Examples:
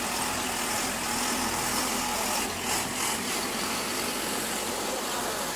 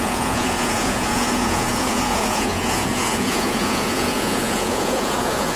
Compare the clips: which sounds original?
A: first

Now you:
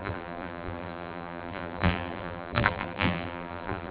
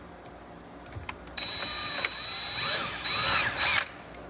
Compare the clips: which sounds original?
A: second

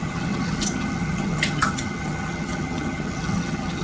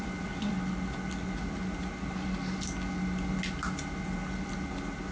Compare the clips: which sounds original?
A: second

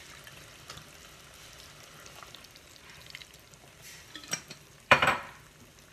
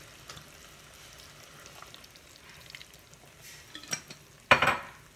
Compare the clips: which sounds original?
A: second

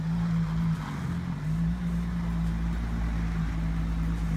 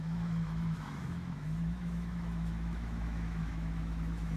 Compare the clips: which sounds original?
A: first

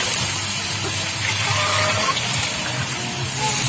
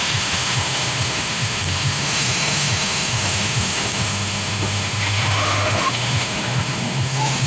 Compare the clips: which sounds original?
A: first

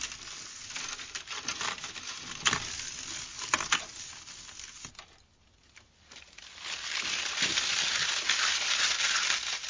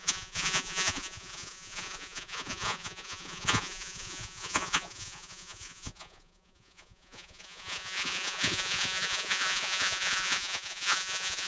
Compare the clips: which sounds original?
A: first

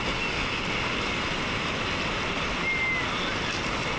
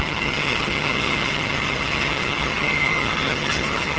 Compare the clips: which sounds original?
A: first